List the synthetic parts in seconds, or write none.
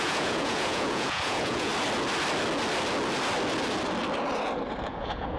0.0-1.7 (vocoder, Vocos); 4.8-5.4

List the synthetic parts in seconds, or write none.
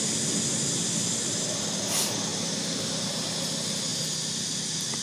2.3-3.1 (vocoder, BigVGAN v2)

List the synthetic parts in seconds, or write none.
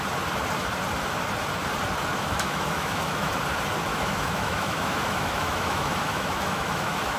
2.1-3.3 (autoencoder, DAC-VAE); 3.9-7.2